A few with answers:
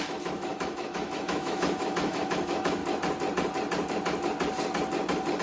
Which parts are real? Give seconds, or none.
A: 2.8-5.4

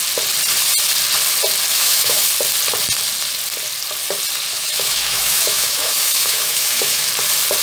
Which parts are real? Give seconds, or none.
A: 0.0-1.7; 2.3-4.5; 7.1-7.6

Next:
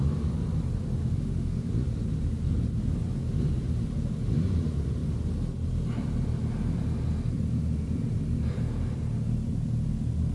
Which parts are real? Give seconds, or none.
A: 0.0-1.0; 1.7-10.3